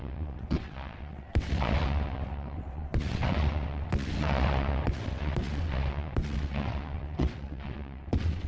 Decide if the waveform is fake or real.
fake